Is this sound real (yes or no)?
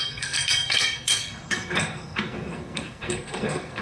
no